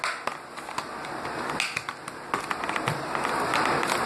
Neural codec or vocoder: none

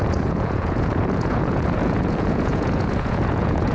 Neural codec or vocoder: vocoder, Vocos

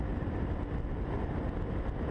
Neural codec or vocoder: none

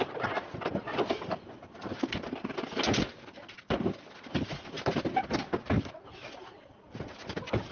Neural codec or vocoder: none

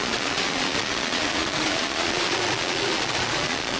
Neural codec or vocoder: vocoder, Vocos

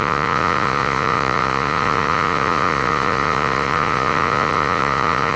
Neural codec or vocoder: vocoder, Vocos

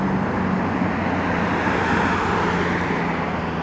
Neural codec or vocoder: none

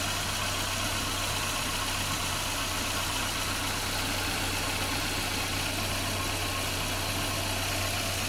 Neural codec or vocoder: none